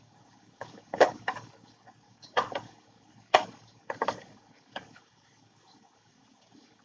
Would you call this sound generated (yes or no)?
yes